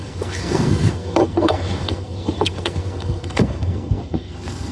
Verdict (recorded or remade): remade